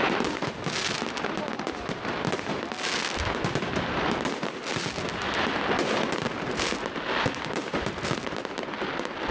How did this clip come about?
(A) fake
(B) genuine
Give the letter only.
A